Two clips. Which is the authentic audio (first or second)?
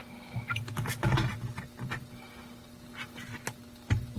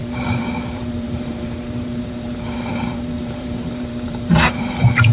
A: first